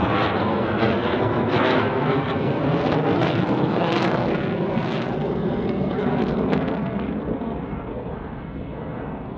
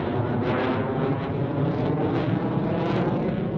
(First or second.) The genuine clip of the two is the second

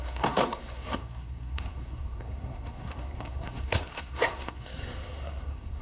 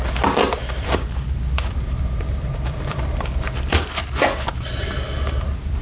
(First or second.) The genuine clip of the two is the second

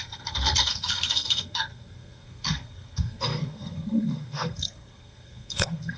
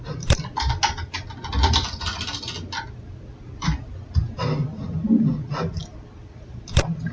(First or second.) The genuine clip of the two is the second